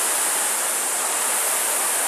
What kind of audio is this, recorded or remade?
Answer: recorded